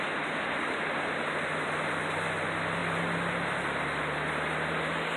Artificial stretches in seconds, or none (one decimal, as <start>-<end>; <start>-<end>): none